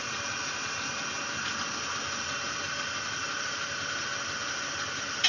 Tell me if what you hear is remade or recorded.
recorded